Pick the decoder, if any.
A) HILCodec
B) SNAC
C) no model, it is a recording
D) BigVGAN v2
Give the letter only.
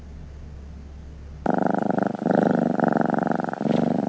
C